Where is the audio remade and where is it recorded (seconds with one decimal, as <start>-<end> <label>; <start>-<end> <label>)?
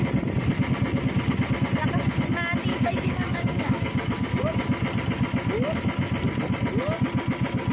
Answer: 0.0-2.7 recorded; 2.7-4.4 remade; 4.4-7.7 recorded